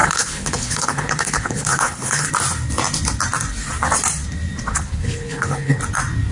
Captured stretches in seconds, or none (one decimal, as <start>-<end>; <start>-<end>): 2.3-4.7; 5.8-6.3